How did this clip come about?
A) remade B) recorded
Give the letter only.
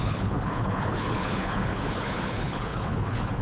A